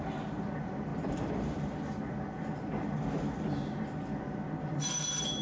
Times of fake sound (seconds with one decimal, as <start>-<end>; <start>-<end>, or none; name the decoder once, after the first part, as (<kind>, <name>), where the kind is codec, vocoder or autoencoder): none